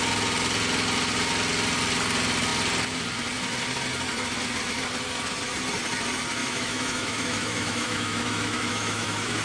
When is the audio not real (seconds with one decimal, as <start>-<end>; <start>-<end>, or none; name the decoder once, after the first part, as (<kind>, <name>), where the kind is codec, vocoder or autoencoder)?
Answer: 6.4-9.4 (autoencoder, DAC-VAE)